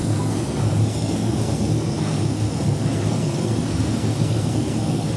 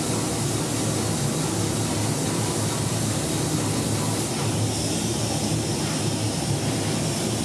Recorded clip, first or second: second